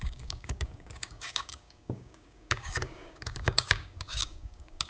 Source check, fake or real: fake